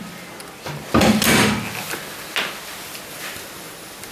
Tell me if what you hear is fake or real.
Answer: real